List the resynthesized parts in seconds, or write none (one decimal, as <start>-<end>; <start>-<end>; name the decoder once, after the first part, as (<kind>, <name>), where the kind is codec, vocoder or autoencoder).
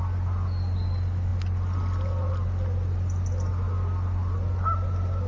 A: none